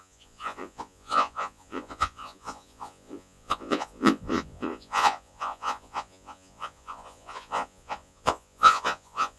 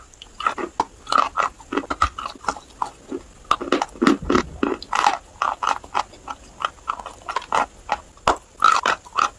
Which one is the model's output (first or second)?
first